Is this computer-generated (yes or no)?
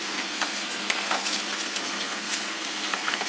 yes